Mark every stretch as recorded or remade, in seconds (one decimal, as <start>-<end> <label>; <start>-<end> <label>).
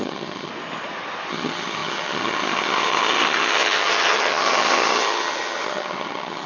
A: 0.0-0.5 remade; 0.5-1.3 recorded; 1.3-6.5 remade